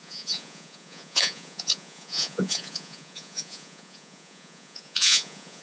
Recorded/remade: remade